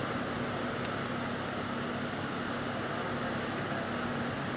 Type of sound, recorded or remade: recorded